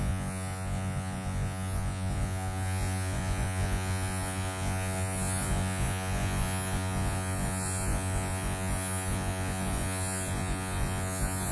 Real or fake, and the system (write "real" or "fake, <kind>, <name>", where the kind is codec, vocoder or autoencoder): fake, vocoder, Vocos